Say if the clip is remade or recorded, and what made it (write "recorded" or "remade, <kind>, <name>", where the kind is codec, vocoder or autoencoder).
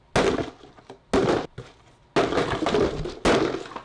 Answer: recorded